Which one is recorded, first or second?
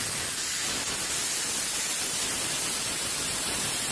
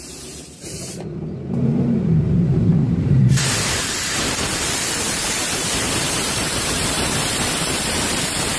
first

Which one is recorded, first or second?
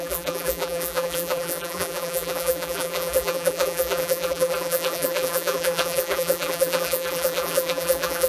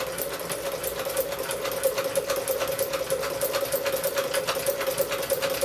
second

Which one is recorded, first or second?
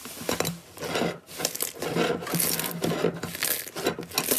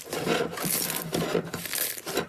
first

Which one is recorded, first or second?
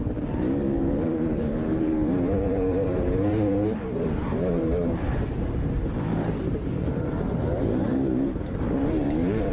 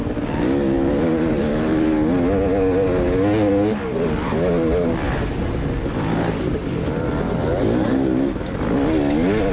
second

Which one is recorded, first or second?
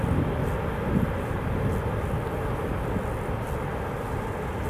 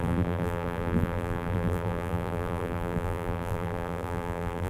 first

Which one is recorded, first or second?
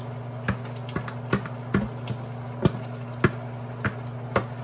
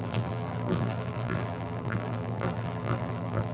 first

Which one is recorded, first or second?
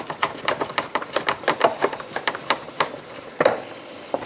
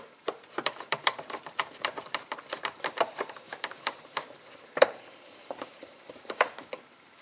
first